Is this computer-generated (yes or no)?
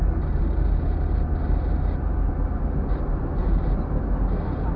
no